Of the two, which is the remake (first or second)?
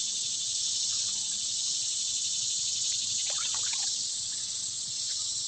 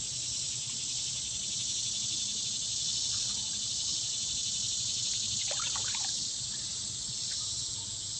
first